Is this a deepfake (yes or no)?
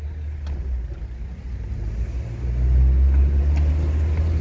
no